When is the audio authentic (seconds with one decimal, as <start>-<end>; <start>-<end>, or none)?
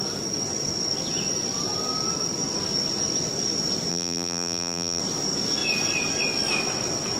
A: 0.0-3.9; 5.0-7.2